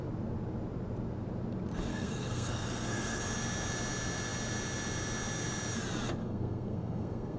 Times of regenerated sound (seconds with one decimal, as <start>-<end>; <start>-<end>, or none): 1.9-3.2; 6.2-7.4